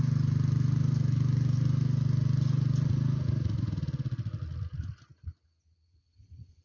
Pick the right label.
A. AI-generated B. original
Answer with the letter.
B